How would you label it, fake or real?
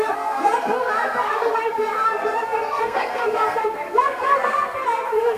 fake